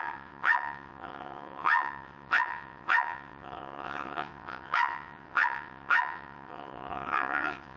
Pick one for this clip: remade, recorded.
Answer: remade